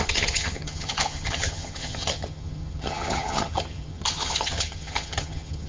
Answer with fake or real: fake